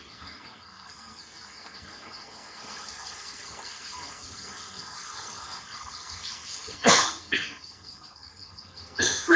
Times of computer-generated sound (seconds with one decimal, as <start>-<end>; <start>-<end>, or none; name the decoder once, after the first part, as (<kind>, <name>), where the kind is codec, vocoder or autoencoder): 0.0-9.4 (codec, SNAC)